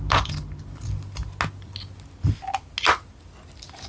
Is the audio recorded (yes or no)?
yes